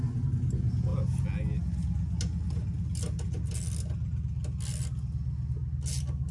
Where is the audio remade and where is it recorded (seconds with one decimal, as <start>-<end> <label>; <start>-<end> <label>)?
0.0-6.3 recorded